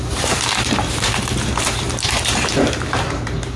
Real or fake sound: fake